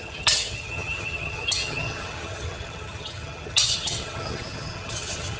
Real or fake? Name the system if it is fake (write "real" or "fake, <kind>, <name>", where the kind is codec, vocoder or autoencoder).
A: fake, vocoder, HiFi-GAN